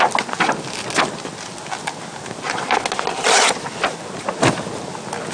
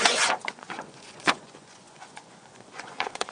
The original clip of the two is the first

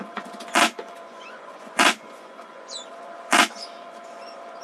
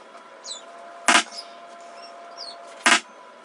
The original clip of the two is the second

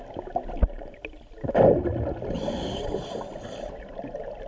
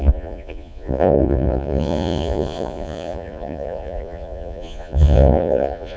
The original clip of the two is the first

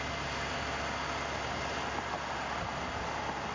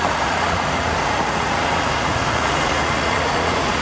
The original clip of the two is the first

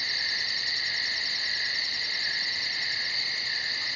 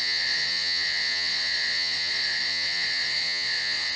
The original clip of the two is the first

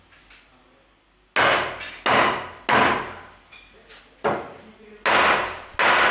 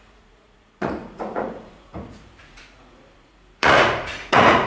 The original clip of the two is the first